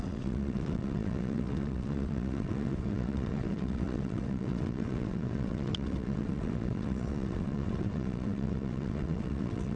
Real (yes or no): no